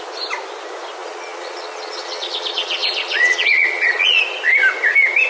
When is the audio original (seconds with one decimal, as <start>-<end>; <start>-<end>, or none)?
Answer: 0.0-1.0; 4.2-5.3